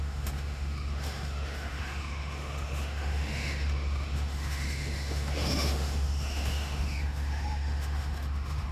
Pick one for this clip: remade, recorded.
remade